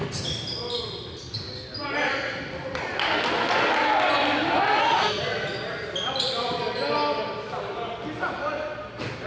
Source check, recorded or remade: recorded